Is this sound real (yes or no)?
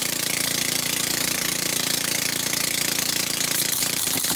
no